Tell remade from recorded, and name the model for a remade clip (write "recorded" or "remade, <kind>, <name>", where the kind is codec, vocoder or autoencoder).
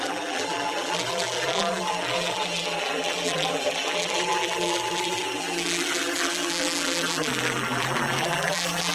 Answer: remade, vocoder, BigVGAN v2